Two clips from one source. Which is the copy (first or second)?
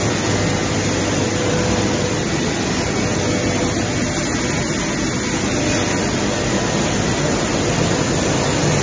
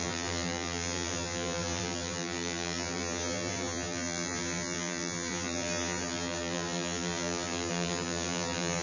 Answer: second